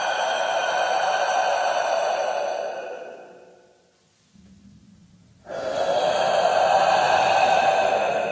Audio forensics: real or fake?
fake